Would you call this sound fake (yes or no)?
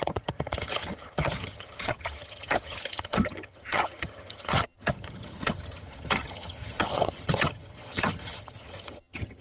yes